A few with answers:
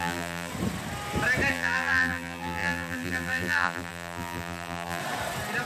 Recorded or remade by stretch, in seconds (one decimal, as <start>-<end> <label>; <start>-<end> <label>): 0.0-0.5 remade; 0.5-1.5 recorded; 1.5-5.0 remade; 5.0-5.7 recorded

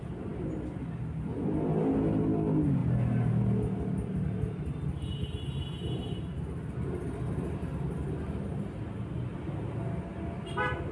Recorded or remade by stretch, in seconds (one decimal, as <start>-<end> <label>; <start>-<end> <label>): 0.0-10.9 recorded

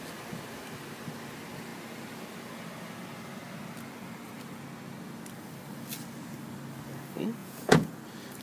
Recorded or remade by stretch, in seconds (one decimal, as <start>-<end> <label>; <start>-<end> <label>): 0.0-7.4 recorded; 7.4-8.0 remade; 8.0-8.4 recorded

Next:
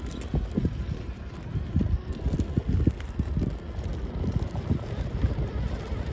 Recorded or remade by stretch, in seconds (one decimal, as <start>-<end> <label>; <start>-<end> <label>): 0.0-0.6 recorded; 0.6-1.8 remade; 1.8-6.1 recorded

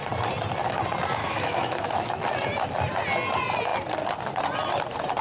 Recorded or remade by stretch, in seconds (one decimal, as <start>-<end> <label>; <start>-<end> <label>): 0.0-1.2 recorded; 1.2-2.2 remade; 2.2-5.2 recorded

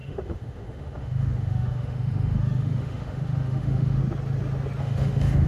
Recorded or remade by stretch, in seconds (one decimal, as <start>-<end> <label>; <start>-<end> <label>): 0.0-4.0 remade; 4.0-4.8 recorded; 4.8-5.5 remade

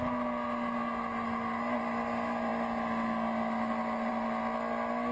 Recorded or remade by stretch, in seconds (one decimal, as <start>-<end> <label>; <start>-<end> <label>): 0.0-5.1 recorded